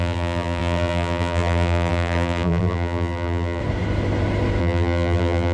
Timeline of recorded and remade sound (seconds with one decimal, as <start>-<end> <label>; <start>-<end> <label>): 0.0-3.6 remade; 3.6-4.6 recorded; 4.6-5.5 remade